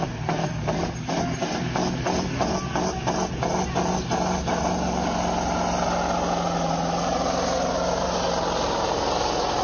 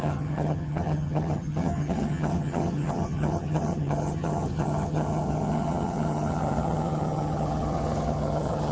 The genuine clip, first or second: first